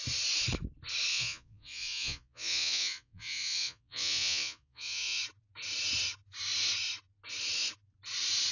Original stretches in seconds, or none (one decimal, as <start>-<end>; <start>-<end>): 0.0-1.1; 5.2-8.5